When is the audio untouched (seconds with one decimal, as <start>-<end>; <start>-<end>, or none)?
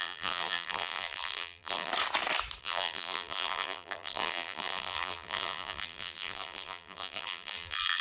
1.9-2.6